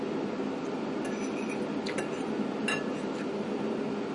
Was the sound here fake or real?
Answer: real